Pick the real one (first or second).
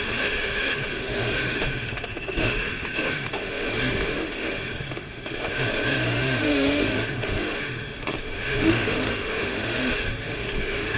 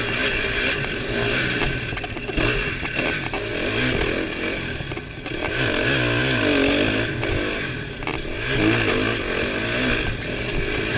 second